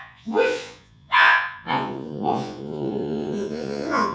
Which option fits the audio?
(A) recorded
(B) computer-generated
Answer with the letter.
B